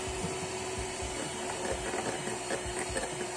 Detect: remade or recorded recorded